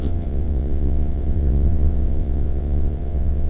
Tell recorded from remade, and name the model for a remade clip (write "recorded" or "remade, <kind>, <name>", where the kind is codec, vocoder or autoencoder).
remade, vocoder, WaveNeXt